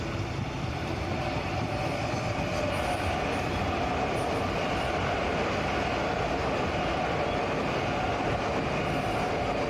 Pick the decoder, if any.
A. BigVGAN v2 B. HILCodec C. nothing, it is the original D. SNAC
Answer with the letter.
C